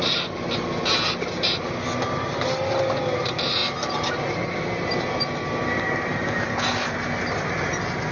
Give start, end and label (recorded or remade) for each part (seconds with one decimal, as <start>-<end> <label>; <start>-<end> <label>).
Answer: 0.0-8.1 recorded